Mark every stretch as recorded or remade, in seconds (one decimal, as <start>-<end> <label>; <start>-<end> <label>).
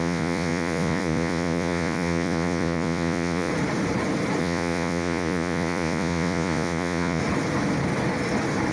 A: 0.0-3.5 remade; 3.5-4.4 recorded; 4.4-7.2 remade; 7.2-8.7 recorded